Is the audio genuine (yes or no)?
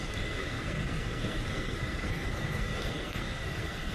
no